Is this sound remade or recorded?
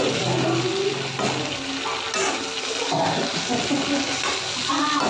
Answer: recorded